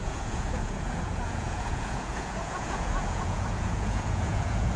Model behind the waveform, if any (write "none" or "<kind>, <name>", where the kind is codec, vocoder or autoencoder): vocoder, Vocos